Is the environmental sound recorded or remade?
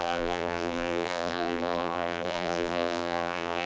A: remade